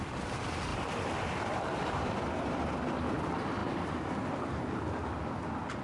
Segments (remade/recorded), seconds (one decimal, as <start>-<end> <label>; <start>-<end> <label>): 0.0-5.8 recorded